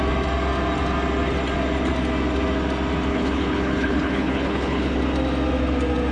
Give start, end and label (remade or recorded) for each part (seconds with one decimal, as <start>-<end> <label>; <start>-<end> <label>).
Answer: 0.0-3.1 recorded; 3.1-5.0 remade; 5.0-6.1 recorded